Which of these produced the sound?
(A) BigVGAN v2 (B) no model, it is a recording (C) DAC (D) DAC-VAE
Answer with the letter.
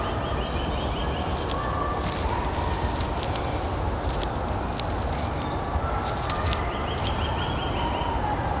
B